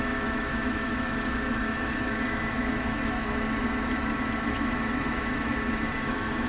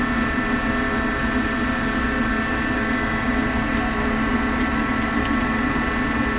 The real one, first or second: second